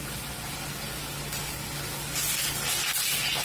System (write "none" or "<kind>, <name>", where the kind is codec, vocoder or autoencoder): none